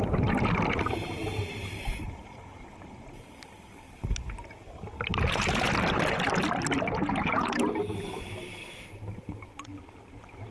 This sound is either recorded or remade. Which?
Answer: recorded